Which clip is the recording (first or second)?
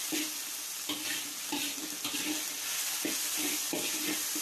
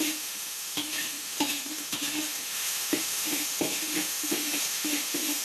first